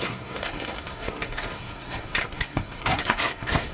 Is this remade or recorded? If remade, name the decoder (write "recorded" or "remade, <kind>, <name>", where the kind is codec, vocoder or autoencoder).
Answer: remade, codec, SNAC